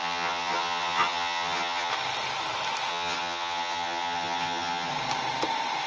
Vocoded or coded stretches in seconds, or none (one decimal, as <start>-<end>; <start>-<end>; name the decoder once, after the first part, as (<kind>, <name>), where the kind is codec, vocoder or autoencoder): 0.0-1.9 (vocoder, HiFi-GAN); 2.9-4.9